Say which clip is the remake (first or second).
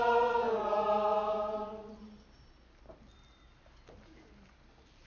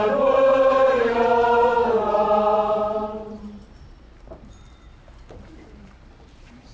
second